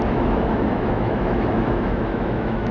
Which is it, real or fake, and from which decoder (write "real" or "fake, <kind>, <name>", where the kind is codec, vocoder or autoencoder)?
fake, autoencoder, DAC-VAE